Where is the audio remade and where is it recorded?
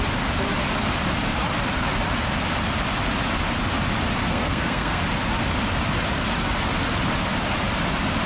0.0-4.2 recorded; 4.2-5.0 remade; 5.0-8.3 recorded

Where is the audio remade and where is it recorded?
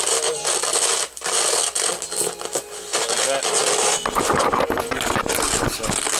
0.0-6.2 recorded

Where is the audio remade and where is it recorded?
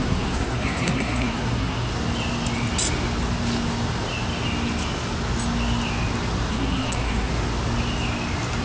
0.0-1.9 remade; 1.9-6.5 recorded; 6.5-7.3 remade; 7.3-8.6 recorded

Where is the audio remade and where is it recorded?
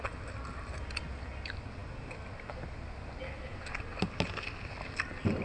0.0-5.4 recorded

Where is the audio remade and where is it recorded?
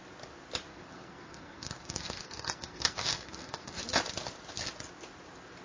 0.0-0.7 recorded; 0.7-3.8 remade; 3.8-5.6 recorded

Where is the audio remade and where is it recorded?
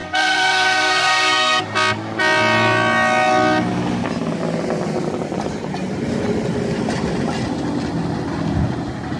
0.0-1.6 remade; 1.6-9.2 recorded